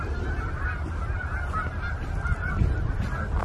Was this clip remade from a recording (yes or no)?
no